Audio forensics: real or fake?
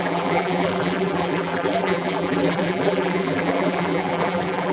fake